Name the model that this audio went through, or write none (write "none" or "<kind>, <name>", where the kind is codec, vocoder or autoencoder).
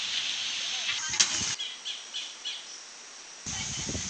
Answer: none